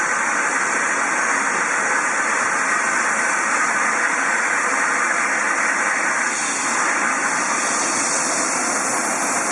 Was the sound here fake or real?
real